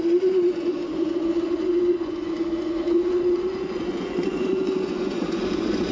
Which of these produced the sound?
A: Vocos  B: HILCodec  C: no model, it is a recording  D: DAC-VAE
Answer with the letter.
A